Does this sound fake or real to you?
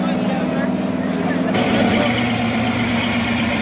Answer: real